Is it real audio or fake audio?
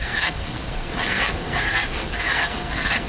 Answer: fake